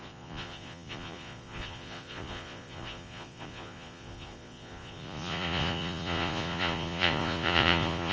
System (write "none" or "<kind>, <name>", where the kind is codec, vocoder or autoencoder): vocoder, Vocos